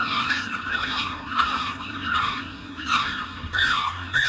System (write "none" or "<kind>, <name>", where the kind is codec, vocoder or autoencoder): codec, SNAC